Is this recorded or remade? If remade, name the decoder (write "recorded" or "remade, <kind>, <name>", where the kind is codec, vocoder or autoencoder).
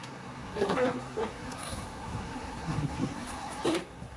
remade, codec, SNAC